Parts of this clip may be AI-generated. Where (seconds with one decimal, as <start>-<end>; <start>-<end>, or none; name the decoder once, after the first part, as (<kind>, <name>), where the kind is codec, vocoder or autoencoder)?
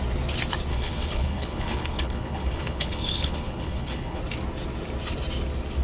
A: 0.7-4.2 (codec, HILCodec)